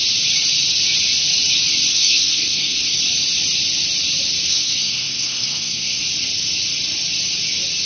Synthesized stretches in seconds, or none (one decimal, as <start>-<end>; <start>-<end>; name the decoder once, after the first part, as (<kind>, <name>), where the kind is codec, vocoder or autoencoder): 1.9-3.0 (codec, SNAC); 4.5-6.0